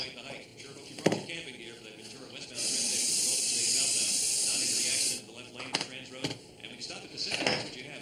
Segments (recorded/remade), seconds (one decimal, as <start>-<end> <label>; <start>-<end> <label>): 0.0-8.0 recorded